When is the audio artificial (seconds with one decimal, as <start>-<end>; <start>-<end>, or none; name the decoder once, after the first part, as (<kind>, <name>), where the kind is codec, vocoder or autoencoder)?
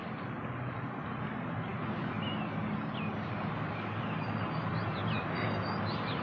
none